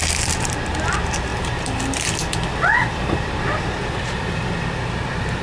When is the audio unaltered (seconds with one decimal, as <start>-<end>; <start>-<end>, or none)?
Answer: 0.0-1.3; 4.5-5.4